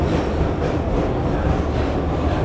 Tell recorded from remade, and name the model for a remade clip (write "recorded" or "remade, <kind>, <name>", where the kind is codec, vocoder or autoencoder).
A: recorded